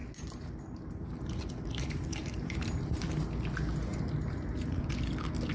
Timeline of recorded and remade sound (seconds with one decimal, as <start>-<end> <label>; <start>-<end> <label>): 0.0-3.0 remade; 3.0-3.9 recorded; 3.9-4.9 remade; 4.9-5.5 recorded